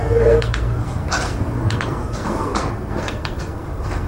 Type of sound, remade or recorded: remade